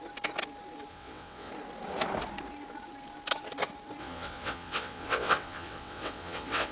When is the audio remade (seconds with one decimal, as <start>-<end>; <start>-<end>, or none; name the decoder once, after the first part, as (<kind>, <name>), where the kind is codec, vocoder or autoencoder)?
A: 0.9-1.5 (vocoder, WaveNeXt); 4.0-6.7